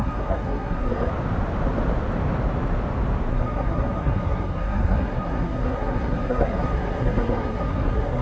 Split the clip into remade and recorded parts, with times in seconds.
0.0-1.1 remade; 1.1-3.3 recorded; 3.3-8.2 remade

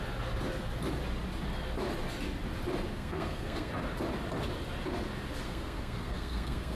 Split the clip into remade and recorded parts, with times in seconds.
0.0-2.9 recorded; 2.9-3.7 remade; 3.7-5.4 recorded; 5.4-6.8 remade